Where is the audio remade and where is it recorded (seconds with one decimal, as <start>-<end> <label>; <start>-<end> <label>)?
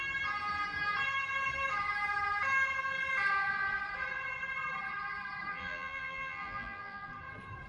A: 0.0-5.5 recorded; 5.5-7.1 remade; 7.1-7.7 recorded